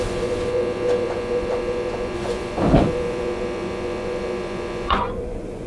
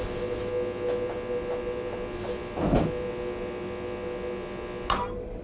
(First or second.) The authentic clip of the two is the second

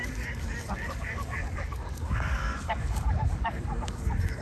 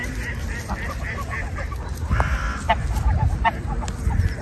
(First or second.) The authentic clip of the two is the second